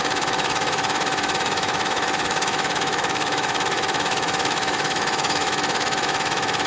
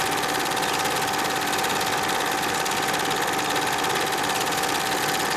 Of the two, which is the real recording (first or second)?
second